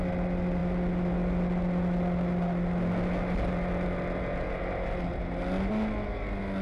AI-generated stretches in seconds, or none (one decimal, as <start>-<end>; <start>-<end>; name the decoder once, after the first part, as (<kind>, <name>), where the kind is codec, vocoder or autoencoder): none